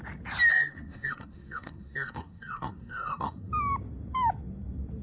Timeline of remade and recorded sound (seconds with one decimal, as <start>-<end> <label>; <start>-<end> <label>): 0.0-0.5 recorded; 0.5-3.5 remade; 3.5-5.0 recorded